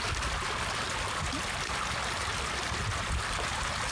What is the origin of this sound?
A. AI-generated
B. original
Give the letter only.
B